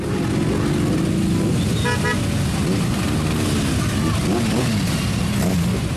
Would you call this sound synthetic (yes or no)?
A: no